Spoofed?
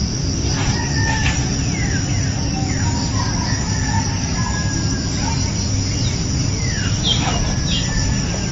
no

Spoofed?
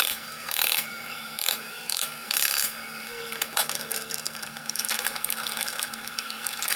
yes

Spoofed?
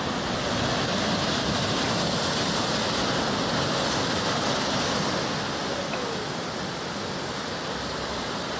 no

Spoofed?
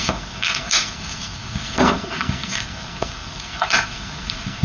yes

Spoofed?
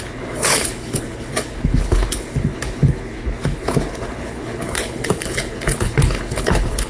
yes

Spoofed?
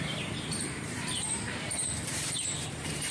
yes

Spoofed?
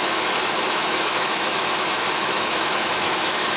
yes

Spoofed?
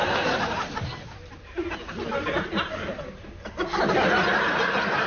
no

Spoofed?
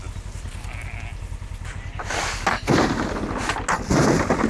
no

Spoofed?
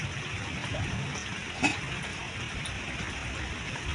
no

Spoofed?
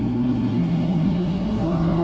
yes